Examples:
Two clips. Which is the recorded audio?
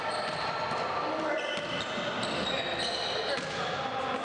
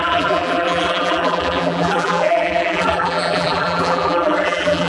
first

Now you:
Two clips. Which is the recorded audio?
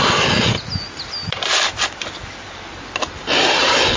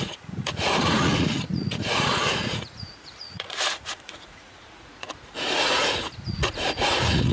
first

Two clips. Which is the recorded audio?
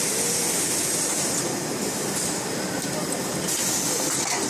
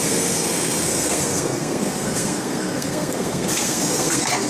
first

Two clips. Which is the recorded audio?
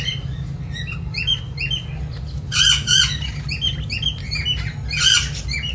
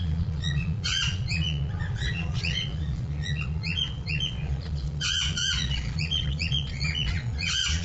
first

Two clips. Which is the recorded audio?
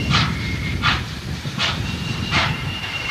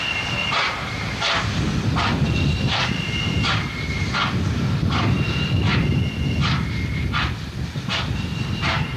second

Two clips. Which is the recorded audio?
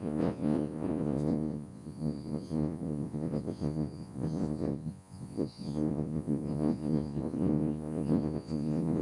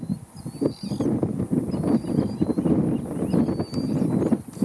second